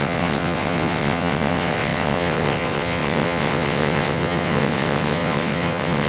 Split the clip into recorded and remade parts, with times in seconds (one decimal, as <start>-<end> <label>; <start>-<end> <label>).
0.0-6.1 remade